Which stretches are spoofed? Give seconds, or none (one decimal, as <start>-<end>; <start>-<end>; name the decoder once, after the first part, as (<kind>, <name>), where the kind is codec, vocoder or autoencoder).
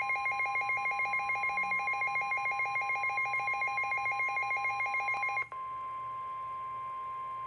none